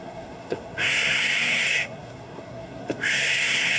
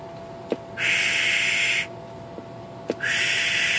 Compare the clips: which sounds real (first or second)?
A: second